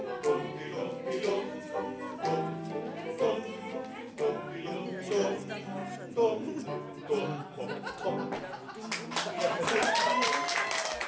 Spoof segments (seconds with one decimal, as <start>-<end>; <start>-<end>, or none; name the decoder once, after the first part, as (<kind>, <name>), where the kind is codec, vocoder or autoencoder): none